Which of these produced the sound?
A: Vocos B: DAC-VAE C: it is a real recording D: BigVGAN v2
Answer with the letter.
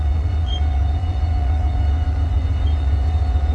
A